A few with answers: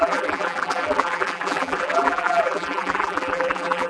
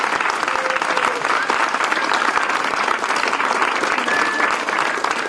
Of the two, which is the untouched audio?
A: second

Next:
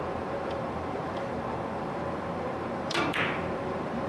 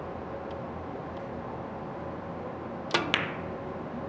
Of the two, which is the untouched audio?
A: second